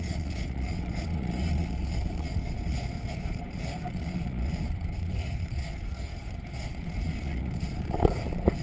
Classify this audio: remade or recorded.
remade